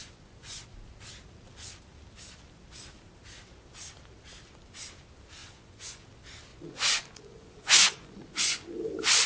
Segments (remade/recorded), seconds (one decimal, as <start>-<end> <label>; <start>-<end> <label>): 0.0-0.7 remade; 0.7-5.4 recorded; 5.4-6.0 remade; 6.0-6.5 recorded; 6.5-8.8 remade; 8.8-9.3 recorded